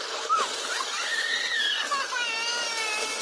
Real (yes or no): yes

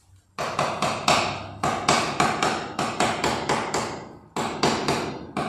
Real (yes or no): yes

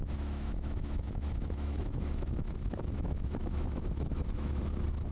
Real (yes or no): no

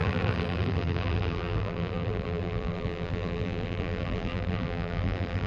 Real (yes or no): no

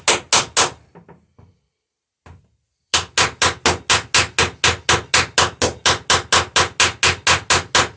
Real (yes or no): yes